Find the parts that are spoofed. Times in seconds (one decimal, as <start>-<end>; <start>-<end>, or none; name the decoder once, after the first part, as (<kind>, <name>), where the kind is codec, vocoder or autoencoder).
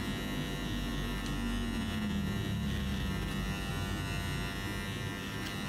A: none